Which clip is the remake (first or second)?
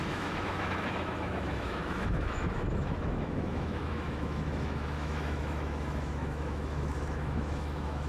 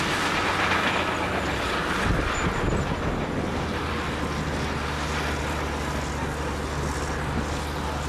first